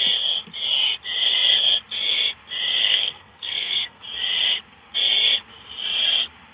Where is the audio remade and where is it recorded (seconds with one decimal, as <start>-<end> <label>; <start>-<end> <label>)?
0.0-2.8 recorded; 2.8-4.0 remade; 4.0-6.5 recorded

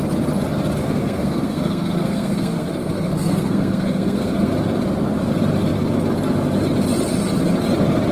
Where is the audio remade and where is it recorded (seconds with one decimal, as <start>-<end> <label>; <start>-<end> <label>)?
0.0-0.8 recorded; 0.8-4.5 remade; 4.5-8.1 recorded

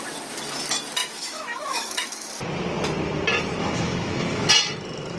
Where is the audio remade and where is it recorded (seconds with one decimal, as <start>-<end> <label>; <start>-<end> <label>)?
0.0-1.0 recorded; 1.0-2.3 remade; 2.3-3.6 recorded; 3.6-4.5 remade; 4.5-5.2 recorded

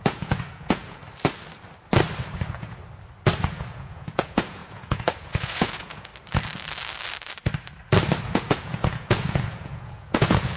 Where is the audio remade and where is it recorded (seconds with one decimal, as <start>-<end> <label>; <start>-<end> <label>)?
0.0-1.0 remade; 1.0-2.4 recorded; 2.4-2.8 remade; 2.8-3.4 recorded; 3.4-6.1 remade; 6.1-8.2 recorded; 8.2-10.6 remade

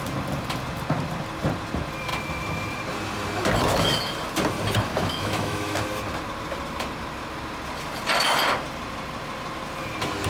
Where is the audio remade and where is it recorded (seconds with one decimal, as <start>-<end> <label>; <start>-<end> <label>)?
0.0-4.9 recorded; 4.9-5.8 remade; 5.8-10.3 recorded